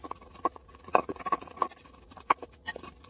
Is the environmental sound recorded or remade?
remade